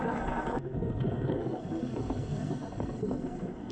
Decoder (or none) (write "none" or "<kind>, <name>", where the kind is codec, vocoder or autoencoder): codec, SNAC